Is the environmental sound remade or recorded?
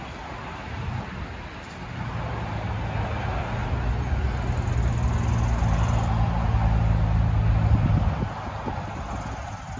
recorded